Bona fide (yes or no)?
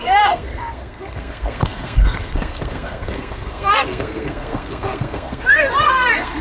no